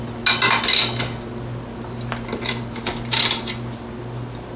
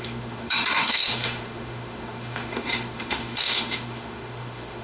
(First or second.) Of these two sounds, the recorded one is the first